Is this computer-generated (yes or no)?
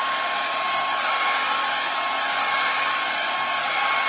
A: no